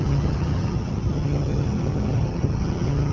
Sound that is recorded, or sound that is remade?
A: remade